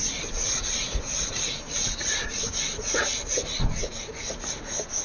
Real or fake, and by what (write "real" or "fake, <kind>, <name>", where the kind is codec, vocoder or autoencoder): fake, vocoder, Vocos